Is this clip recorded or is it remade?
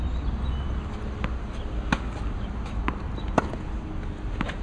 recorded